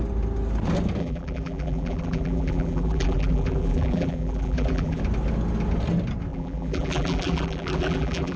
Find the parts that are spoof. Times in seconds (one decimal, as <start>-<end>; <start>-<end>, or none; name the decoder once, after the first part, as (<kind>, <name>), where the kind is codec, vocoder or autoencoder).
1.0-5.0 (vocoder, BigVGAN v2); 6.3-8.4